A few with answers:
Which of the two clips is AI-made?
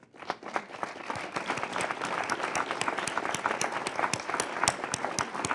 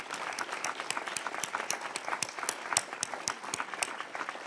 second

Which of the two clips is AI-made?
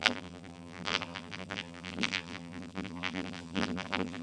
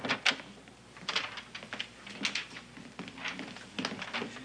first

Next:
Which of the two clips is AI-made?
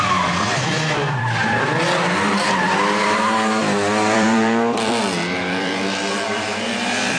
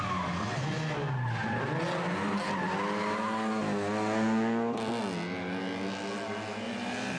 first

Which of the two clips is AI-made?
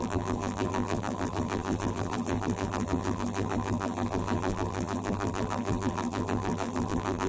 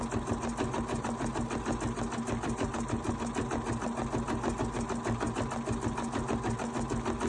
first